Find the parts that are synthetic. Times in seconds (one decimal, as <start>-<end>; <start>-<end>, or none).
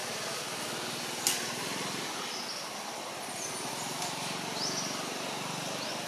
none